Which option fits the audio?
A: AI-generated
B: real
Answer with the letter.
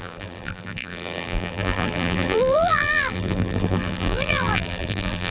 A